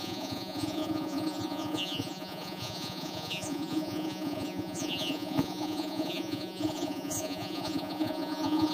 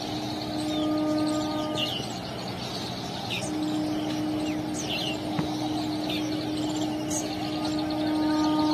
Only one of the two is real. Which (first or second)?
second